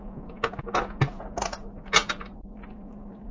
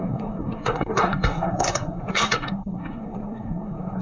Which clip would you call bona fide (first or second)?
first